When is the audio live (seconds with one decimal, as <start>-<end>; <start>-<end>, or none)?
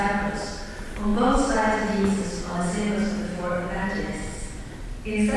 0.0-5.4